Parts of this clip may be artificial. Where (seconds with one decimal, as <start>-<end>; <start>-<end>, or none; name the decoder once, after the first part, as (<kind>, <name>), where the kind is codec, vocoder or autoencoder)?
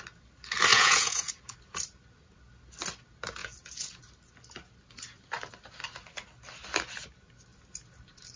0.7-1.3 (vocoder, Vocos); 3.4-4.0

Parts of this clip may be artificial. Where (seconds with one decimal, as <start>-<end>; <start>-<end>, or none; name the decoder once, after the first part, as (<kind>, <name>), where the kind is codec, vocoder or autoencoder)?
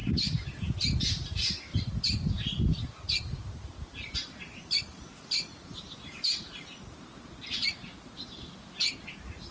none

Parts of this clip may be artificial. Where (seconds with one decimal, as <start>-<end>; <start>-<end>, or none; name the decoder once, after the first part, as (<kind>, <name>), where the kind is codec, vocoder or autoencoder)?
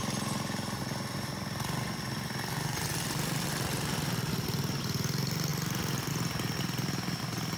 none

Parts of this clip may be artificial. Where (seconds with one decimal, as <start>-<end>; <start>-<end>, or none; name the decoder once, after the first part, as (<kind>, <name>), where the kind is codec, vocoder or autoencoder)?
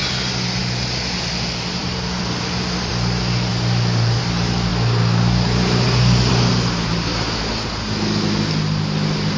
1.8-2.9 (vocoder, BigVGAN v2)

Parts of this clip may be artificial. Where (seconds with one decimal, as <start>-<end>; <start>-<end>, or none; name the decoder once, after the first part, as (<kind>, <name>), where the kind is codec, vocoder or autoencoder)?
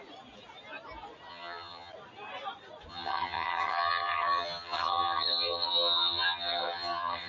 1.3-1.9 (vocoder, HiFi-GAN); 2.9-7.3